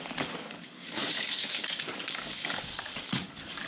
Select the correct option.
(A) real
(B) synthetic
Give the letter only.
B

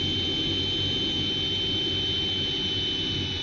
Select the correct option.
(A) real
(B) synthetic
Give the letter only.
A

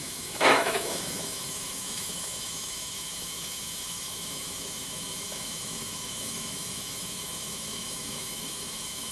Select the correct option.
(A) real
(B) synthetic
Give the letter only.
B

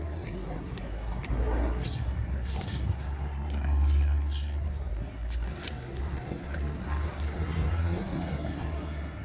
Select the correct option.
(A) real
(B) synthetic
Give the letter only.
B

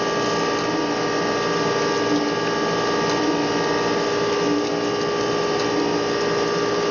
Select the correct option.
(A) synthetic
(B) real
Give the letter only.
B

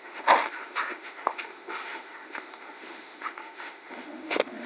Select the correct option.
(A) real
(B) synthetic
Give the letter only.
B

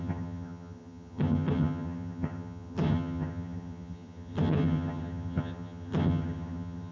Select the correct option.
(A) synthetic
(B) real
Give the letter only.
A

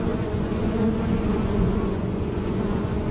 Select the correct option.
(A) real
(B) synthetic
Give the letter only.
B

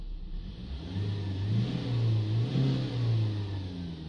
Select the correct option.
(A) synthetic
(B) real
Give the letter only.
B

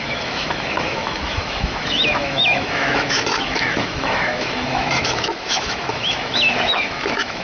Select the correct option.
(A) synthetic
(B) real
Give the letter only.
A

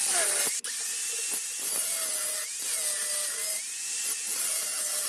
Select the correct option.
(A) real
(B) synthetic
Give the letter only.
A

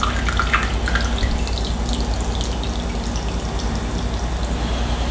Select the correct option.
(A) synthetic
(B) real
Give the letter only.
B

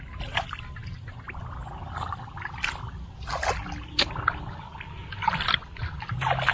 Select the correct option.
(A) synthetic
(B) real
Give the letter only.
B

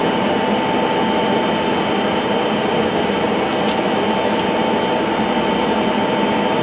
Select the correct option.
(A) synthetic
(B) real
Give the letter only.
B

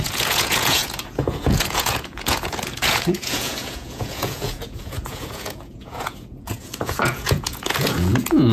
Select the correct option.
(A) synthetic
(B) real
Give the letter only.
A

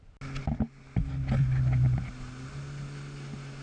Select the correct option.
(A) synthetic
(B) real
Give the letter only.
B